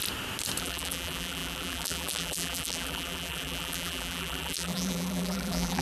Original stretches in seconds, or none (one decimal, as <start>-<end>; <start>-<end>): 0.0-0.6